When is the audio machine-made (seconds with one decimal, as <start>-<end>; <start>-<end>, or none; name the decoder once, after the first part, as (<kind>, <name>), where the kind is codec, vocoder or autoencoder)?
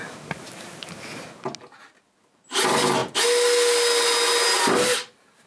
none